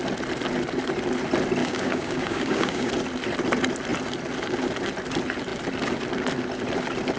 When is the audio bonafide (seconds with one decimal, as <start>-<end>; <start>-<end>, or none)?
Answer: 0.0-1.6; 2.9-7.2